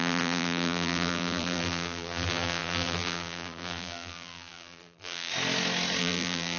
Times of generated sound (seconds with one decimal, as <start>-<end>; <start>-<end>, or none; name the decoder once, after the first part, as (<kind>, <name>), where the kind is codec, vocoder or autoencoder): 0.0-5.3 (vocoder, BigVGAN v2); 6.0-6.6